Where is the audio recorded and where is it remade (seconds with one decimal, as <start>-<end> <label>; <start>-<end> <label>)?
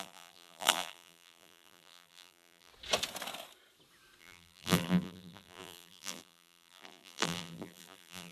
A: 0.0-2.7 remade; 2.7-4.2 recorded; 4.2-8.3 remade